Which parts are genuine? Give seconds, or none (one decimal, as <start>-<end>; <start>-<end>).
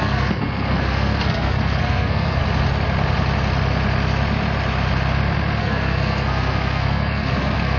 2.4-5.6